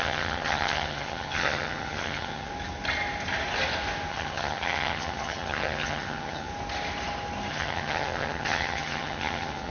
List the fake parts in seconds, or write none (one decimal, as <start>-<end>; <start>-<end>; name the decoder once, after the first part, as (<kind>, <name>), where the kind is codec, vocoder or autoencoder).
0.0-2.5 (vocoder, HiFi-GAN); 4.1-6.5; 7.5-9.7